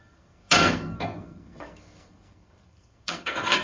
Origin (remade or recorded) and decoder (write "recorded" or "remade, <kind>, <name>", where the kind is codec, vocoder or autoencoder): remade, codec, SNAC